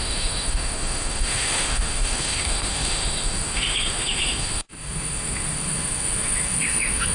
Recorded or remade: remade